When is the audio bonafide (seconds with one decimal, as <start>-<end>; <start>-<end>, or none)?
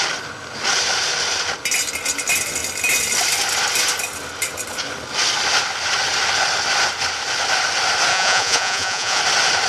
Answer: 0.0-8.1; 9.2-9.7